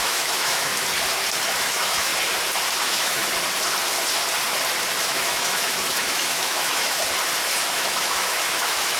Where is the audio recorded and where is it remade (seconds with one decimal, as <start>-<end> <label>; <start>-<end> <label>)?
0.0-0.7 remade; 0.7-1.6 recorded; 1.6-2.1 remade; 2.1-2.8 recorded; 2.8-3.2 remade; 3.2-5.0 recorded; 5.0-7.0 remade; 7.0-7.7 recorded; 7.7-9.0 remade

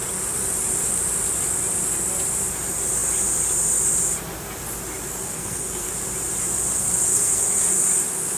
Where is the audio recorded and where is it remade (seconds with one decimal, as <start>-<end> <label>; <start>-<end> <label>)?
0.0-5.1 recorded; 5.1-5.9 remade; 5.9-6.7 recorded; 6.7-7.7 remade; 7.7-8.4 recorded

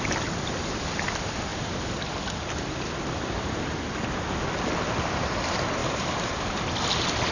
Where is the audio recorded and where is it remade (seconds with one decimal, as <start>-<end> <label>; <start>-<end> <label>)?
0.0-7.3 recorded

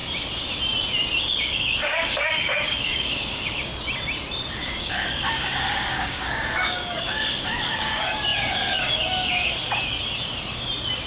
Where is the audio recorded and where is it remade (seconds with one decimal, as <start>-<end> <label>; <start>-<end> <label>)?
0.0-1.2 recorded; 1.2-3.7 remade; 3.7-4.5 recorded; 4.5-9.5 remade; 9.5-11.1 recorded

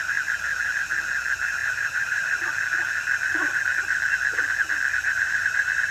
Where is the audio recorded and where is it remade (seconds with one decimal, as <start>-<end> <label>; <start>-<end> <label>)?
0.0-1.6 recorded; 1.6-2.3 remade; 2.3-5.0 recorded; 5.0-5.9 remade

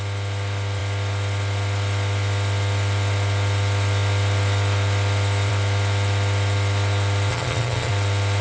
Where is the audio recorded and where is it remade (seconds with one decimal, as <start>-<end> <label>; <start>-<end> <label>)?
0.0-7.3 recorded; 7.3-7.9 remade; 7.9-8.4 recorded

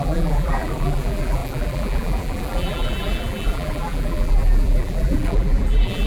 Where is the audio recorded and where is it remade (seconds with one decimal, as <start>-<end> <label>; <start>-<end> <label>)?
0.0-6.1 remade

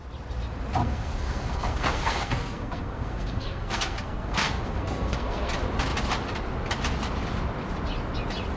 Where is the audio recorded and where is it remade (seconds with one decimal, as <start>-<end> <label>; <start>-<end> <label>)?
0.0-0.8 recorded; 0.8-5.5 remade; 5.5-8.6 recorded